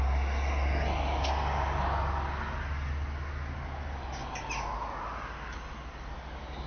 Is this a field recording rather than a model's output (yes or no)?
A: yes